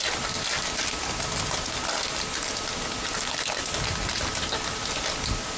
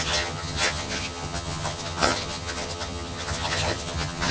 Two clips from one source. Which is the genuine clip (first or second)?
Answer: first